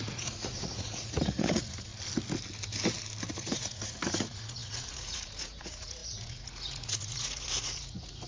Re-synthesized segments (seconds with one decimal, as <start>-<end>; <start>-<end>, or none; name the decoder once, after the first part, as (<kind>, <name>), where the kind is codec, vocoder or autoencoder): 0.0-1.9 (vocoder, Vocos); 3.3-8.3